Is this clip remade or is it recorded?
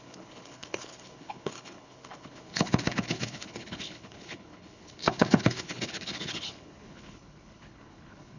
remade